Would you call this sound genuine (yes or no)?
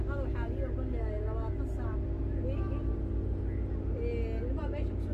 yes